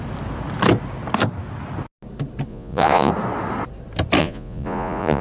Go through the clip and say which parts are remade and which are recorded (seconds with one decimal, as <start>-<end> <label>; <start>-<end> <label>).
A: 0.0-2.5 recorded; 2.5-3.1 remade; 3.1-4.2 recorded; 4.2-5.2 remade